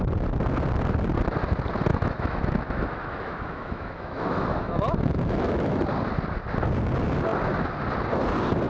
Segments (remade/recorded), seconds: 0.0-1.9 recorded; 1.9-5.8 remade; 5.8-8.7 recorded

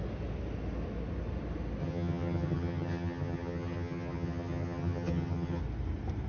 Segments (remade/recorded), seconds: 0.0-1.8 recorded; 1.8-5.6 remade; 5.6-6.3 recorded

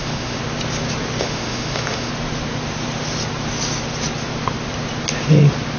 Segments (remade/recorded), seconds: 0.0-0.4 remade; 0.4-1.2 recorded; 1.2-2.1 remade; 2.1-5.8 recorded

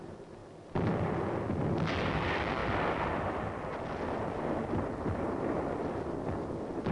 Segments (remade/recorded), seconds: 0.0-6.9 recorded

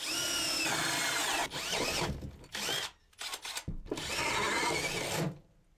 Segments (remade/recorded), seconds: 0.0-5.8 recorded

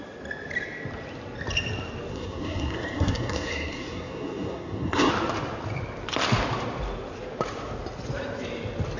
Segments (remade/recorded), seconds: 0.0-2.1 recorded; 2.1-5.1 remade; 5.1-9.0 recorded

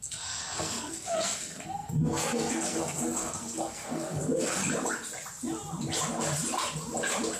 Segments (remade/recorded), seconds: 0.0-4.6 remade; 4.6-7.4 recorded

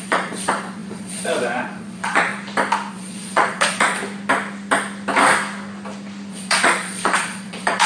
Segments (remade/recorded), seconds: 0.0-2.3 remade; 2.3-2.9 recorded; 2.9-4.0 remade; 4.0-6.3 recorded; 6.3-7.9 remade